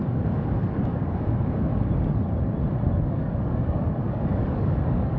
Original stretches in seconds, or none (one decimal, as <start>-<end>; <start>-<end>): 1.7-3.0